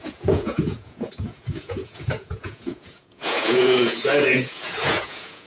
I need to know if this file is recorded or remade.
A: remade